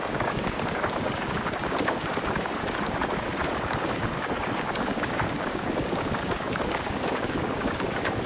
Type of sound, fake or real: fake